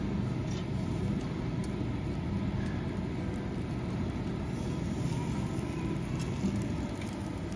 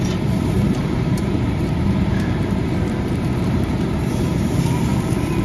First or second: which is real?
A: first